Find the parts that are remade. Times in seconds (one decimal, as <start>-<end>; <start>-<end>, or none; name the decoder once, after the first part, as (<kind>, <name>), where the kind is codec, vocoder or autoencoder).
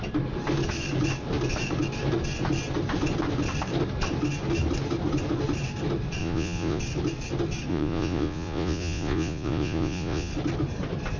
6.2-6.8 (vocoder, Vocos); 7.7-10.3